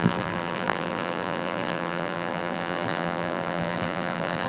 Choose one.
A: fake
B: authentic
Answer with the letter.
A